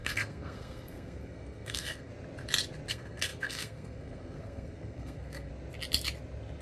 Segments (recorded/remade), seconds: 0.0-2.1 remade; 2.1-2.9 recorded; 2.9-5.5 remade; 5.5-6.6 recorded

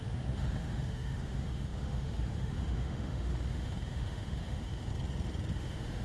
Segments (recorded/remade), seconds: 0.0-4.9 remade; 4.9-5.5 recorded; 5.5-6.0 remade

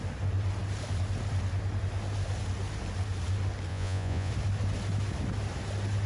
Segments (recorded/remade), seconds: 0.0-3.7 recorded; 3.7-4.3 remade; 4.3-6.1 recorded

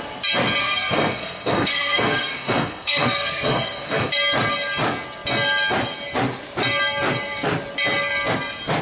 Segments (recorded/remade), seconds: 0.0-0.6 recorded; 0.6-4.1 remade; 4.1-8.8 recorded

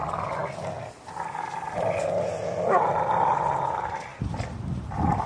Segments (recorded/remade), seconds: 0.0-4.1 recorded; 4.1-5.3 remade

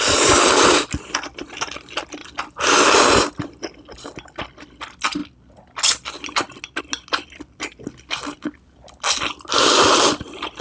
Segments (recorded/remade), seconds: 0.0-10.6 recorded

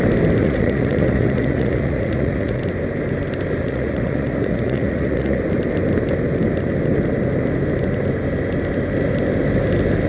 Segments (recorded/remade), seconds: 0.0-0.4 recorded; 0.4-2.6 remade; 2.6-3.6 recorded; 3.6-5.4 remade; 5.4-10.1 recorded